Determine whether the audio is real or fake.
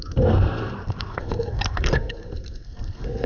fake